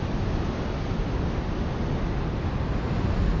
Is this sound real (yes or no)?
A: yes